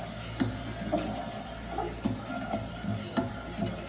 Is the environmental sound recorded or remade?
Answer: recorded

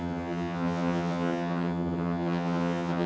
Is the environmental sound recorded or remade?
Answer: remade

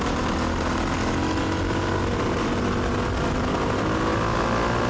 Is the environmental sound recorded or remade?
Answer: recorded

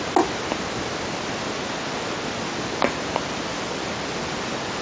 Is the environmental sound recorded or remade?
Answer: recorded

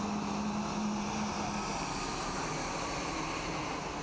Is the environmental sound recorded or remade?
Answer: recorded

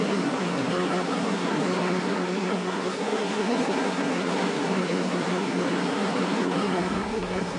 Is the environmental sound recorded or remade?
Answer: remade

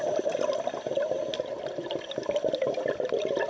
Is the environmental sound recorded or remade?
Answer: recorded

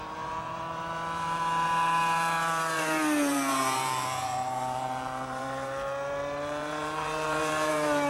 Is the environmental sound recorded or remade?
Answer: remade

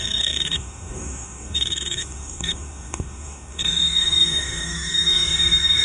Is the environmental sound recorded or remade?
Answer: remade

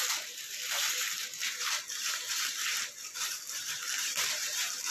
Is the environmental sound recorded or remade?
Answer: remade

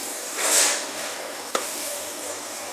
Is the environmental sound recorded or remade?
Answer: remade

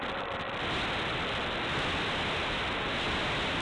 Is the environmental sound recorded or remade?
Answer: recorded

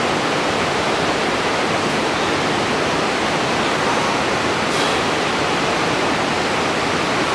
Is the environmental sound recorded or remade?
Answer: recorded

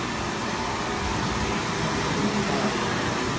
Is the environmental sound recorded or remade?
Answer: recorded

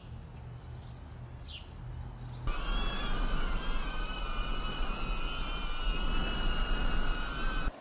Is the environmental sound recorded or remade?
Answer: recorded